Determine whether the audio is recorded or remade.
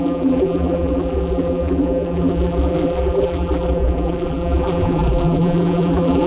remade